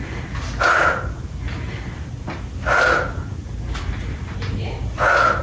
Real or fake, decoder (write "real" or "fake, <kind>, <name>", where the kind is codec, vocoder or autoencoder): real